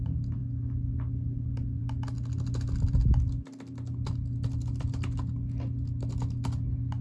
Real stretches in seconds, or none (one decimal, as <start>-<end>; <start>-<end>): 0.0-7.0